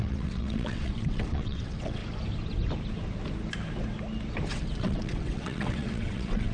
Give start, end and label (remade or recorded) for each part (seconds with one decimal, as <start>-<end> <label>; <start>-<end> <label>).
0.0-2.0 remade; 2.0-4.5 recorded; 4.5-6.5 remade